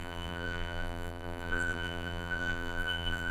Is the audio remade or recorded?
remade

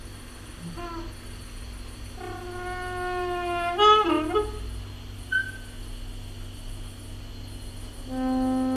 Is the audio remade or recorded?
recorded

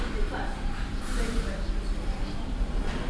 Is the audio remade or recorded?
recorded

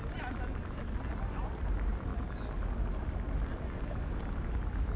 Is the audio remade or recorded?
recorded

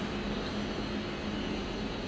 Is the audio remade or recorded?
recorded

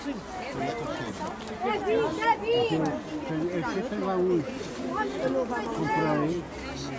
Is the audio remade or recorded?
recorded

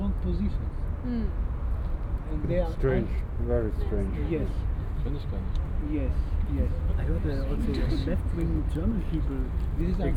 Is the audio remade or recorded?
recorded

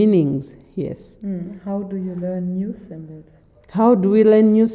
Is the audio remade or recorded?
recorded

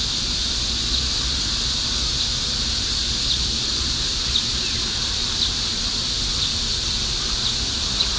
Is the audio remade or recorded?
recorded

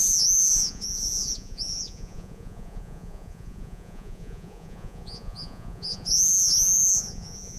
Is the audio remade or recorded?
remade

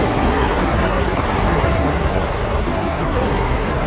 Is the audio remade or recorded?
remade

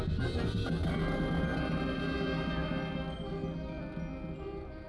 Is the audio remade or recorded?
recorded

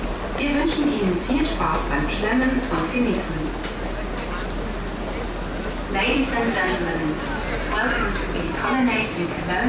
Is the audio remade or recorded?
recorded